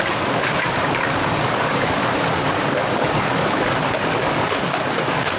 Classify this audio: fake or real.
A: fake